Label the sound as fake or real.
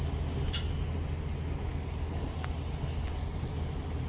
real